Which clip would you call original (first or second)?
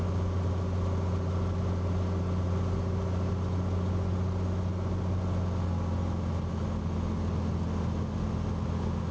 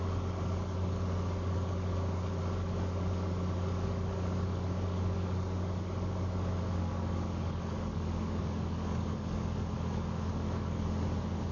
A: first